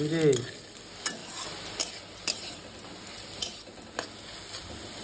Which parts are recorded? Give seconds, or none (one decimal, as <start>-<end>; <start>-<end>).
0.0-5.0